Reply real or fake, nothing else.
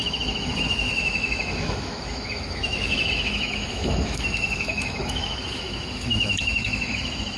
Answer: fake